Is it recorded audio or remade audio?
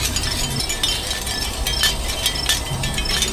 recorded